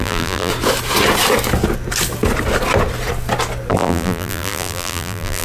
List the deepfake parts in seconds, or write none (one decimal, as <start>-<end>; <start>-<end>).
0.0-0.5; 3.7-5.4